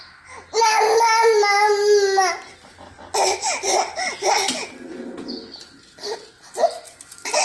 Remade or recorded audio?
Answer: recorded